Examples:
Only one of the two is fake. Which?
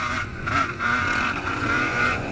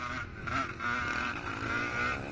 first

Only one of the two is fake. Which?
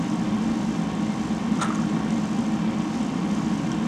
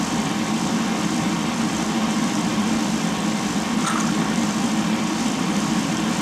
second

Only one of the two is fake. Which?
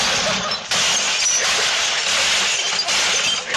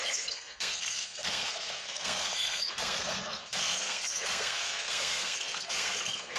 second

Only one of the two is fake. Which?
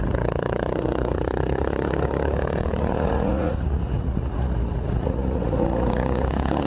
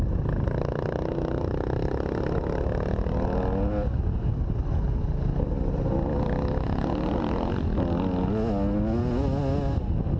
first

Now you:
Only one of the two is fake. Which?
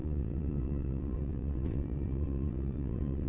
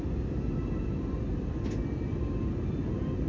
first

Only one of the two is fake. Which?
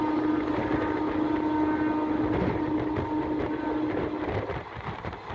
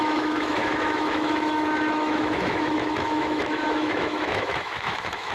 second